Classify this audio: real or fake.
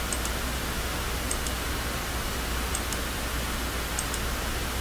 real